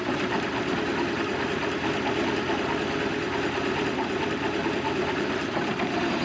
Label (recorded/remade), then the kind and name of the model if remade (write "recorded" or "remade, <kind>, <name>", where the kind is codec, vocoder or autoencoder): recorded